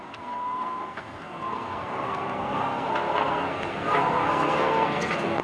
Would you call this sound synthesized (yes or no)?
yes